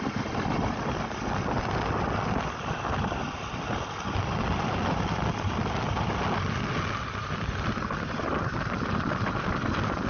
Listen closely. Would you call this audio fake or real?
real